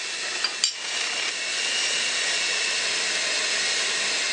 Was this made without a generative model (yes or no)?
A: yes